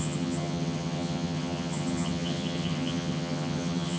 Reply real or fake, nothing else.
fake